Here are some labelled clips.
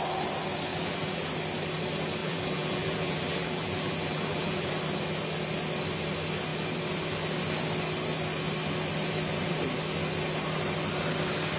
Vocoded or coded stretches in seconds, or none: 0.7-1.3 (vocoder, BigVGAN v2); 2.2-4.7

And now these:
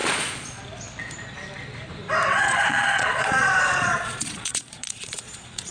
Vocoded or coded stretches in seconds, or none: 0.0-0.6 (vocoder, Vocos); 2.3-5.7

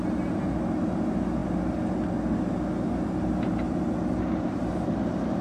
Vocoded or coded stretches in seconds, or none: none

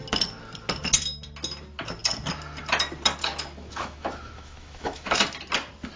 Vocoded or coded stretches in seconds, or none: 3.2-5.2 (autoencoder, DAC-VAE)

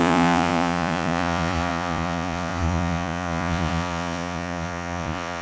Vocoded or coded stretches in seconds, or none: 0.0-5.4 (vocoder, Vocos)

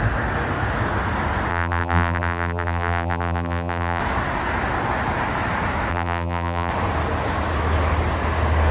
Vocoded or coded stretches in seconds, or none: 1.5-4.0 (vocoder, BigVGAN v2); 5.9-6.7

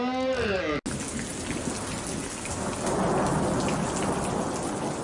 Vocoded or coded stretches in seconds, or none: none